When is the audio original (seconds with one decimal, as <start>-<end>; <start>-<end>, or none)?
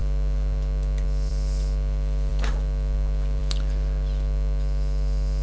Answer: 0.0-5.4